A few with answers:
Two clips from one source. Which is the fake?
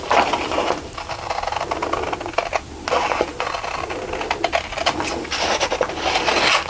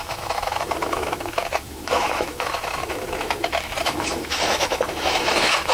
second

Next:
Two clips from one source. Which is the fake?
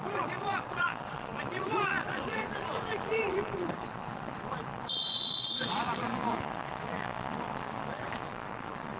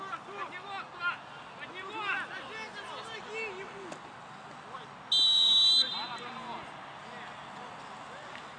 first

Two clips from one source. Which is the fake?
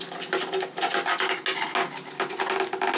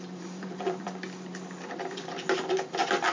second